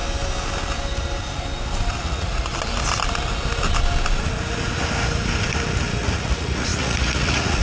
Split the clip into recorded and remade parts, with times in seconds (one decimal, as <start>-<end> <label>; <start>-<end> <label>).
0.0-2.0 recorded; 2.0-2.5 remade; 2.5-6.0 recorded; 6.0-7.6 remade